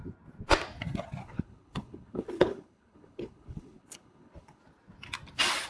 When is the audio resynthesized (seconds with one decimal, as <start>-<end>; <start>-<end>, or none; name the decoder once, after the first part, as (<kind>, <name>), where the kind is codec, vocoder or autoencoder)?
1.2-4.6 (codec, HILCodec)